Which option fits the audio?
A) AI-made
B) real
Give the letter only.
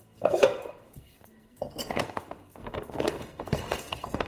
A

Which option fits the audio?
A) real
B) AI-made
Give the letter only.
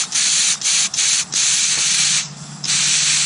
A